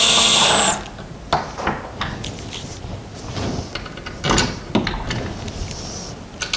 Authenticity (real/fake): real